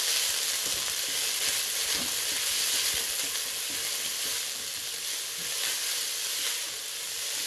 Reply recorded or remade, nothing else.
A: recorded